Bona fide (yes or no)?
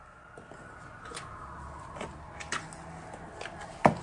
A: yes